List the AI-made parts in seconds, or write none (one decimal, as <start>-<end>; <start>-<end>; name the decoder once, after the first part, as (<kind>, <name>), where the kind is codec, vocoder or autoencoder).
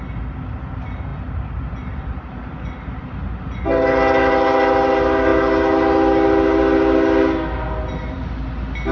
none